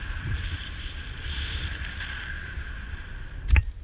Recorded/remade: remade